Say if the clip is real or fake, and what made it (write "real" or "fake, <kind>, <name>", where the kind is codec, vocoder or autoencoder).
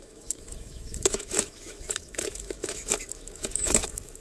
fake, autoencoder, DAC-VAE